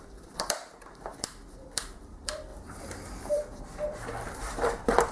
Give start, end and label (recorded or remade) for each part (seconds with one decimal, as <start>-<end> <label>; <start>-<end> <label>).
0.0-5.1 remade